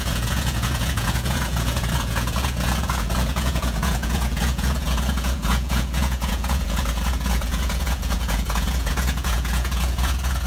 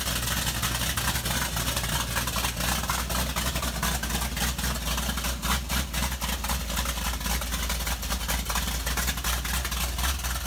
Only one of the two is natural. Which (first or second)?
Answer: second